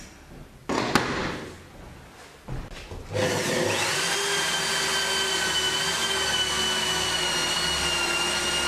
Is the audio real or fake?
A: real